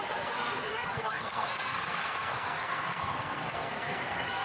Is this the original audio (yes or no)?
no